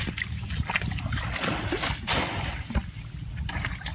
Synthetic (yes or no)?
no